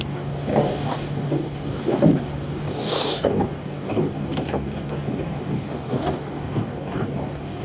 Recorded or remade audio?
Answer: remade